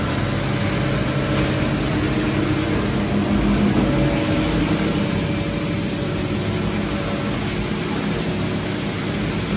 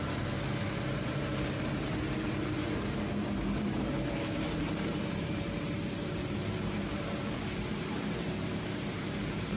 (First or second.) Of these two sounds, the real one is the first